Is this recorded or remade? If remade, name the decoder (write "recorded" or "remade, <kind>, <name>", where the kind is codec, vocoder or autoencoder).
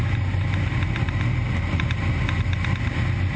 recorded